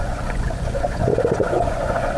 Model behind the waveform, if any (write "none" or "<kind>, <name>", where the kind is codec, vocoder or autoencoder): vocoder, Vocos